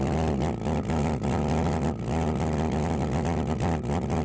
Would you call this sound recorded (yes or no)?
yes